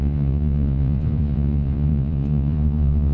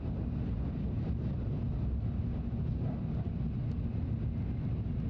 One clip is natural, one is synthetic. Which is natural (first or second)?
second